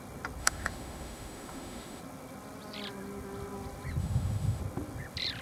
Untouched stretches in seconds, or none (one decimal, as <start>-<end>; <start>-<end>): 0.0-0.4; 2.0-4.0; 4.6-5.4